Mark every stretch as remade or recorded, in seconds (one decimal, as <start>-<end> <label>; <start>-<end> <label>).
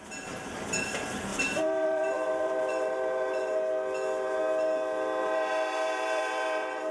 0.0-1.3 recorded; 1.3-3.5 remade; 3.5-5.2 recorded; 5.2-6.9 remade